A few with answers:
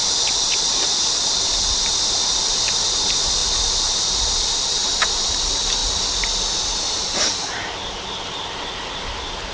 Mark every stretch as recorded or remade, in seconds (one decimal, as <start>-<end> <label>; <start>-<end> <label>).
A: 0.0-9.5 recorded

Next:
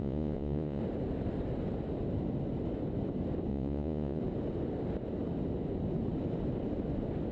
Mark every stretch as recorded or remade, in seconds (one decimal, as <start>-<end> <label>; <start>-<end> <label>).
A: 0.0-0.8 remade; 0.8-3.5 recorded; 3.5-4.2 remade; 4.2-7.3 recorded

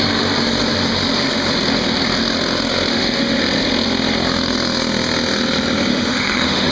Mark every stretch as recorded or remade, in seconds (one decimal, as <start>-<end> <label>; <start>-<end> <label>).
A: 0.0-2.9 recorded; 2.9-3.4 remade; 3.4-5.9 recorded; 5.9-6.7 remade

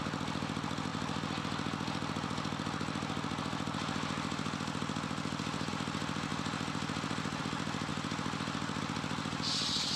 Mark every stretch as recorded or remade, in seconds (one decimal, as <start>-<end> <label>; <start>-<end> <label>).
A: 0.0-10.0 recorded

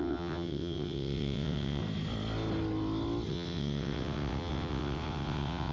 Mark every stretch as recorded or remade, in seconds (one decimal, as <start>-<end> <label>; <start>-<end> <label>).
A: 0.0-1.8 remade; 1.8-3.3 recorded; 3.3-5.7 remade

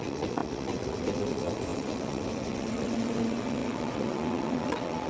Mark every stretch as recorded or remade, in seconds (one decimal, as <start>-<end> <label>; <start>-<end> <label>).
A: 0.0-5.1 remade

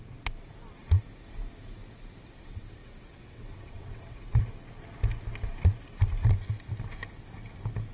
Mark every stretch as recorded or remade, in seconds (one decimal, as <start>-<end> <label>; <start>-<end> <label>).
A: 0.0-2.3 recorded; 2.3-4.4 remade; 4.4-7.9 recorded